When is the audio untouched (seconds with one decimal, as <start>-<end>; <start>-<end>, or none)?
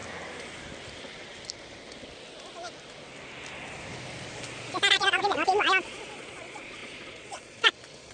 0.0-4.9